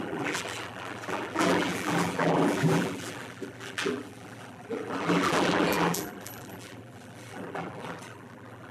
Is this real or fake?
fake